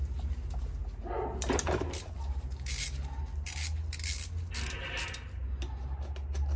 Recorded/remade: recorded